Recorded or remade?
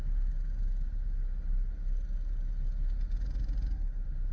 recorded